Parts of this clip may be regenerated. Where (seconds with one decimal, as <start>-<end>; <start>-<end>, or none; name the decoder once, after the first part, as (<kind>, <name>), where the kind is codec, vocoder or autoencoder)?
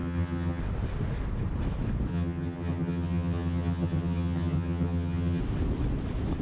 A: 0.0-0.6 (vocoder, HiFi-GAN); 2.1-5.4